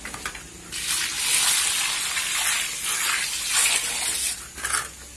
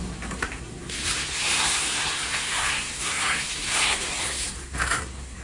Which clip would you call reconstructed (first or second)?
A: second